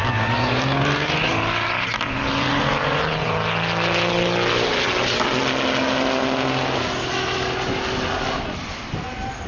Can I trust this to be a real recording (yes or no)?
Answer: yes